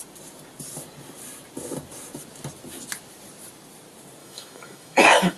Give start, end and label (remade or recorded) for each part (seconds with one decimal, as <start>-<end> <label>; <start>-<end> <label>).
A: 0.0-4.2 recorded; 4.2-5.4 remade